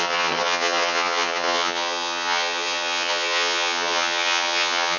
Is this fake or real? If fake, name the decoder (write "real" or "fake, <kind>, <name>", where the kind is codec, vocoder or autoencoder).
fake, vocoder, HiFi-GAN